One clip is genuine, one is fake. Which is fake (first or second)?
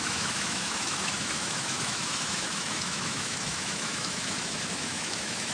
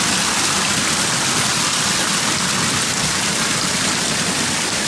first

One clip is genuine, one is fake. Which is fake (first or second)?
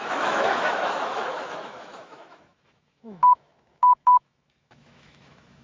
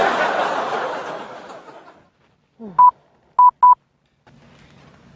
first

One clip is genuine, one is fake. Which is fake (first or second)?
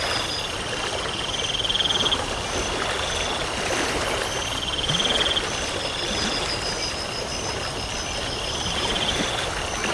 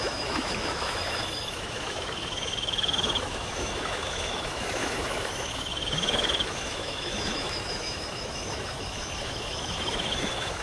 second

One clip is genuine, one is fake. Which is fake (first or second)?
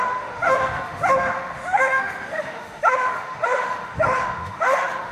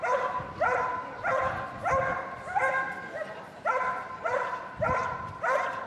first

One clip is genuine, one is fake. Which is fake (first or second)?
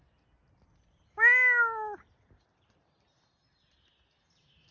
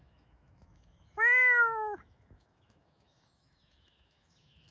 second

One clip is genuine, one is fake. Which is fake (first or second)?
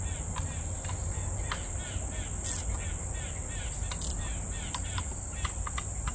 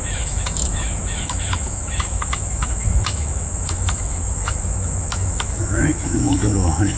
second